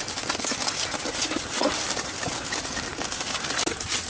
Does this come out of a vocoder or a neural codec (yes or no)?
no